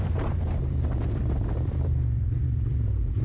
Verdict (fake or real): fake